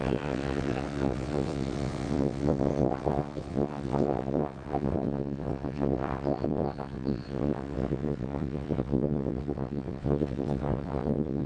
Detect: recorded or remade remade